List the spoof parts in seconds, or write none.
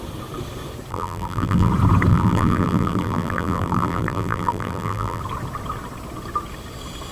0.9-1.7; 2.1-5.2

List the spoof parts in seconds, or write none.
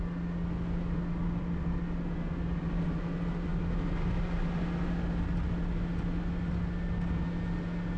none